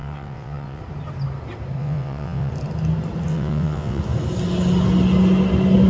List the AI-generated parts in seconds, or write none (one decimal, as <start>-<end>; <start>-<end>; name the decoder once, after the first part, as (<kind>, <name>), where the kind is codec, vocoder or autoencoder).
0.0-0.8 (vocoder, WaveNeXt); 1.8-2.5; 3.3-4.0